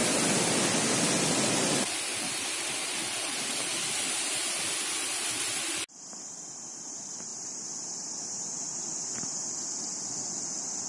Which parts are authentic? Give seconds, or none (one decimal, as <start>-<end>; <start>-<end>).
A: 0.0-10.9